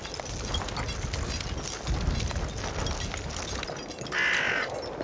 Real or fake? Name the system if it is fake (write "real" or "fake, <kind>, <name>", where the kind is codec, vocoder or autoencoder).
real